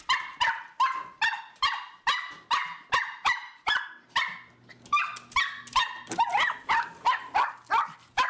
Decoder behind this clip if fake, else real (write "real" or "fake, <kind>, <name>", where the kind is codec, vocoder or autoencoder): real